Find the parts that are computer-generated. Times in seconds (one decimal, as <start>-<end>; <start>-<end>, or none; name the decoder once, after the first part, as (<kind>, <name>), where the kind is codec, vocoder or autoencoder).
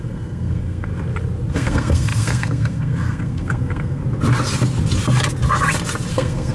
0.0-0.9 (codec, SNAC); 1.5-4.0; 6.1-6.5